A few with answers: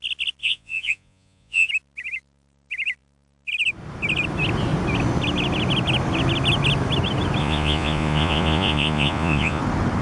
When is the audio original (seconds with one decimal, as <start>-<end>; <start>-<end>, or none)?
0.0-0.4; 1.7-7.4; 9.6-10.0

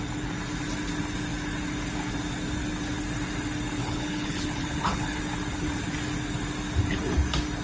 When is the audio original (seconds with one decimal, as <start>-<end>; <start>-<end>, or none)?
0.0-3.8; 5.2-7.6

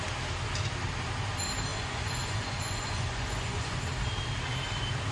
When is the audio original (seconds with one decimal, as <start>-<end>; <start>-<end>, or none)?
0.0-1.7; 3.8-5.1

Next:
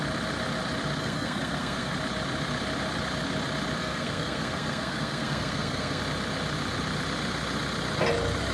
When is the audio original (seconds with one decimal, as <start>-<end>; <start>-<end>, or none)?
0.0-1.0; 1.9-3.8; 6.0-8.5

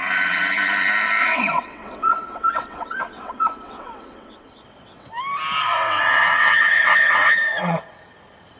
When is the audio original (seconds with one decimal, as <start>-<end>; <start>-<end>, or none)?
0.0-1.2; 5.1-5.7; 7.8-8.6

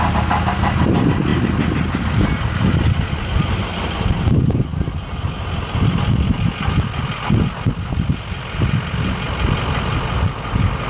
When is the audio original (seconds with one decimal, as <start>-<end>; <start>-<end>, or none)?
0.0-10.9

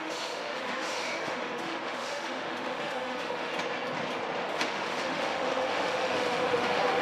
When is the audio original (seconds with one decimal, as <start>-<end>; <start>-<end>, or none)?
3.5-4.5

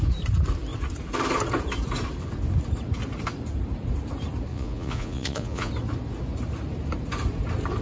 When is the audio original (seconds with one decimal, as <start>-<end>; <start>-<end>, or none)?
0.0-4.5; 5.7-7.8